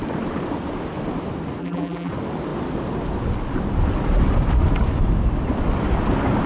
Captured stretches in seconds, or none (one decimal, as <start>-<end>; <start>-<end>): 0.0-1.6; 2.1-6.5